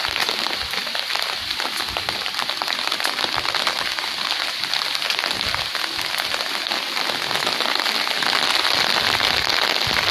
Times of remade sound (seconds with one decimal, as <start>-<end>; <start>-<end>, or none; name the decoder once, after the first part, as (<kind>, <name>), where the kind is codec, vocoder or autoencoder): 0.8-4.0 (vocoder, BigVGAN v2)